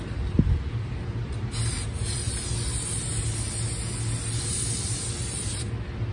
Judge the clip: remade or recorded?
recorded